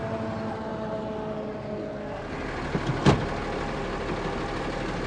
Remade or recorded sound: recorded